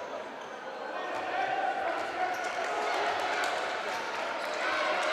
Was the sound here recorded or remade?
recorded